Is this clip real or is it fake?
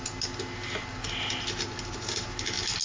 real